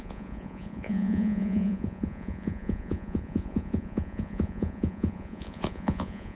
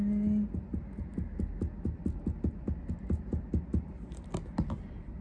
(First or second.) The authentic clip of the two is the second